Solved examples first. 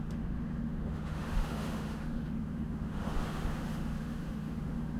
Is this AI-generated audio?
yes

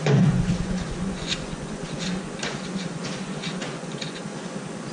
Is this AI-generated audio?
yes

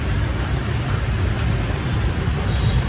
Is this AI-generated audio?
yes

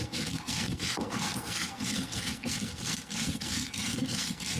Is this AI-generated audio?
yes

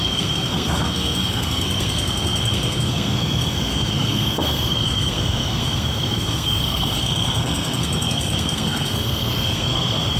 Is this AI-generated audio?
yes